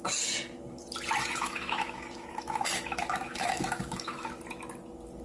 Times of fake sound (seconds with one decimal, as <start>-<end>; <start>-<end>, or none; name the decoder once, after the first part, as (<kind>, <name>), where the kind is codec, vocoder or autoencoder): 1.2-4.3 (autoencoder, DAC-VAE)